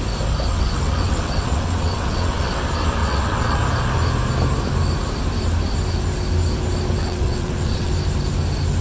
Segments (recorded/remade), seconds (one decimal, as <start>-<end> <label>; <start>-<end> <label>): 0.0-0.5 recorded; 0.5-2.6 remade; 2.6-3.0 recorded; 3.0-3.6 remade; 3.6-7.0 recorded; 7.0-7.9 remade; 7.9-8.8 recorded